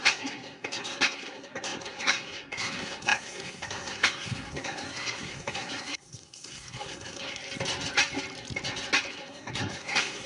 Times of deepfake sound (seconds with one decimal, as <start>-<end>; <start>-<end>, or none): 0.0-7.4; 9.1-10.3